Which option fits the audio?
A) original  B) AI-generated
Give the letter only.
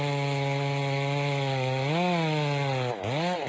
A